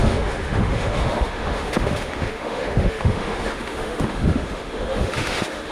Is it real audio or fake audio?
fake